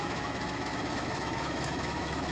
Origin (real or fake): fake